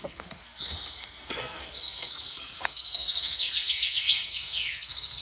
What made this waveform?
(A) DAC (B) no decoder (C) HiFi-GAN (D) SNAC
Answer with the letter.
D